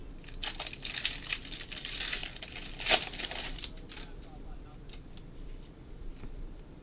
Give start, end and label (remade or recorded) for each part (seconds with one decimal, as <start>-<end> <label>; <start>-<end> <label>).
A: 0.0-0.4 remade; 0.4-1.2 recorded; 1.2-6.8 remade